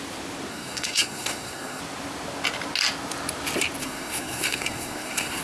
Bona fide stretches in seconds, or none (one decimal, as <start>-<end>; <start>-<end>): 0.0-0.5; 1.8-3.8